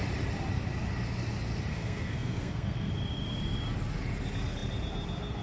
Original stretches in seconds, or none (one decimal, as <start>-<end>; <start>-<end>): 0.0-1.7; 2.9-5.4